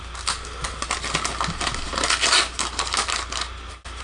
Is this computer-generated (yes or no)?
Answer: no